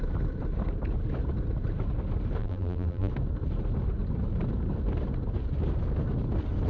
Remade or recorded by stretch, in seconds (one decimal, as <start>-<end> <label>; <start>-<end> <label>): 0.0-2.4 recorded; 2.4-3.1 remade; 3.1-6.7 recorded